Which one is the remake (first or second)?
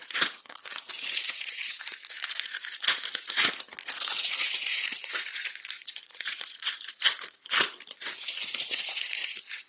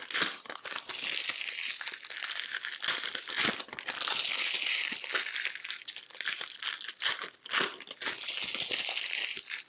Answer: first